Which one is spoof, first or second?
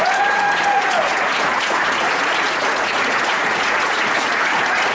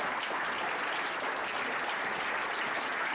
first